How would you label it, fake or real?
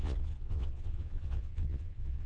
fake